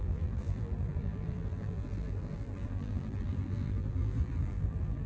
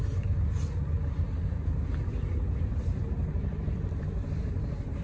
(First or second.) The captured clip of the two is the second